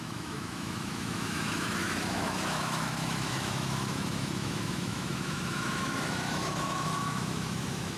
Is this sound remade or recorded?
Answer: remade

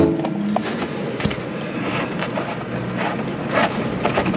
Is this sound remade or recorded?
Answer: recorded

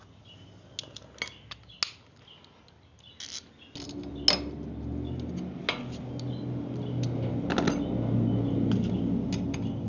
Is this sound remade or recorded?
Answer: recorded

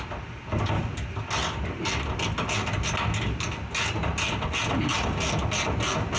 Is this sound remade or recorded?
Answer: recorded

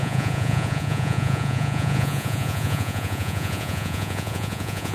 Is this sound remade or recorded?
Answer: remade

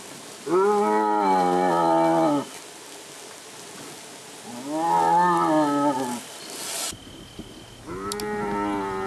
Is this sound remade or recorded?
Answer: recorded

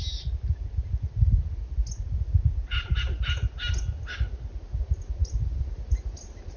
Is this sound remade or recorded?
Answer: recorded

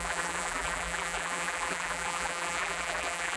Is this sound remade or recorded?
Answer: remade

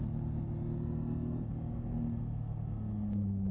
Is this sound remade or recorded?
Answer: recorded